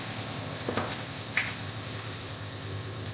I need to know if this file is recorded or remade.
remade